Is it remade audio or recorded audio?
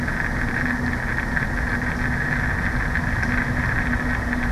recorded